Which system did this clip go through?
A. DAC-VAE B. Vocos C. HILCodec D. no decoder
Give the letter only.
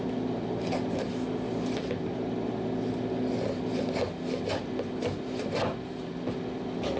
D